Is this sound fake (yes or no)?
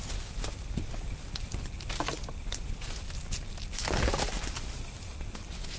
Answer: no